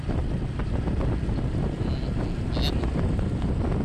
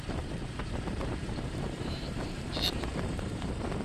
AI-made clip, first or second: second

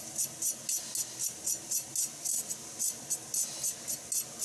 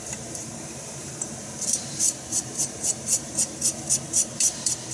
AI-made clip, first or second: second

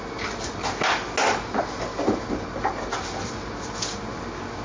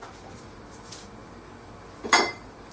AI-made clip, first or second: second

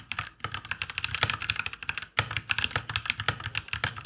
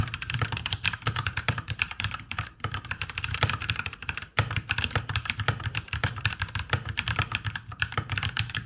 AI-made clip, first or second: second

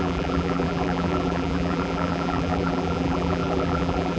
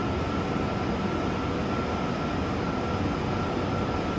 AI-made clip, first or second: first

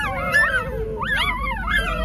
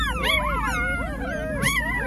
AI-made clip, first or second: first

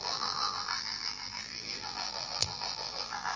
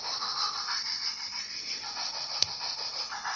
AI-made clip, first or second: first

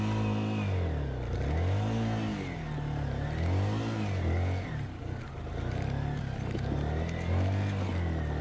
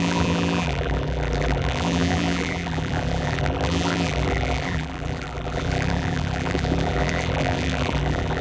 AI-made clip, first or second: second